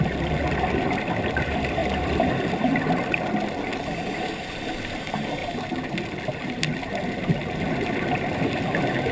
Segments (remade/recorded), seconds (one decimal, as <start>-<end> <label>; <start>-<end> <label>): 0.0-1.8 recorded; 1.8-2.3 remade; 2.3-9.1 recorded